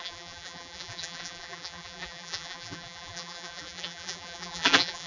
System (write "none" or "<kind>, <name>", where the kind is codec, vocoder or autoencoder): vocoder, BigVGAN v2